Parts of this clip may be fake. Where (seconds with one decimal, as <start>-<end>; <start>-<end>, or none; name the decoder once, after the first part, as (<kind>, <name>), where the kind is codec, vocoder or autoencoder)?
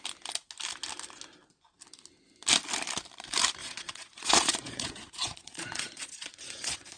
3.6-7.0 (vocoder, Vocos)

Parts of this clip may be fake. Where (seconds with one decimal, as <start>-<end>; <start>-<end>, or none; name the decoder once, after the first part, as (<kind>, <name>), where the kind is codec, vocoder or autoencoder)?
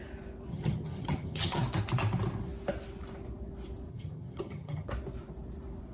0.5-1.6 (vocoder, HiFi-GAN); 3.9-4.9